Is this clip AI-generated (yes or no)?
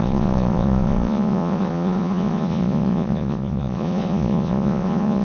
yes